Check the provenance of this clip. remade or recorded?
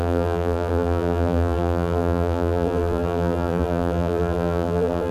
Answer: remade